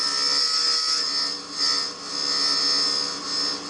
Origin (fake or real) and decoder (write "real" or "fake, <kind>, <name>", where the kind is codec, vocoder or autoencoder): real